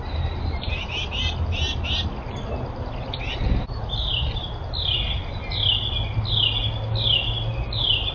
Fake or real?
real